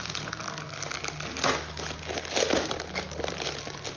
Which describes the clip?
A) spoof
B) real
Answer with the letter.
B